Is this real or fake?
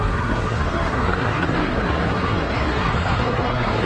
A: fake